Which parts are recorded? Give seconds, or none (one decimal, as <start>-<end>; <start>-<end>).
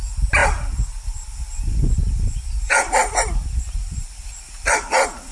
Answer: 0.0-5.3